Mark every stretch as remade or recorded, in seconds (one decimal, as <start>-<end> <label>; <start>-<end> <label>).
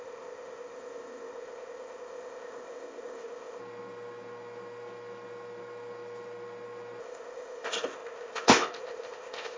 0.0-3.6 remade; 3.6-7.0 recorded; 7.0-9.6 remade